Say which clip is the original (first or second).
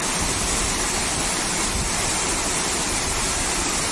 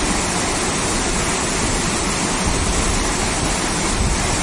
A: second